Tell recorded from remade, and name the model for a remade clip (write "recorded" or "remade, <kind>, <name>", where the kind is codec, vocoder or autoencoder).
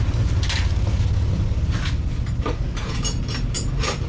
recorded